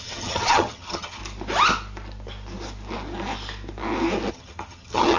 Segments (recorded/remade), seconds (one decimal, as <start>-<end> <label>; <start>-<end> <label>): 0.0-1.2 remade; 1.2-4.3 recorded; 4.3-5.2 remade